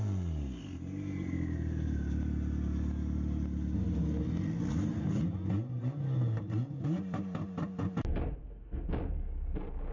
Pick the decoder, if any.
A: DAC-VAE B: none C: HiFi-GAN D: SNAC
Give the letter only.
B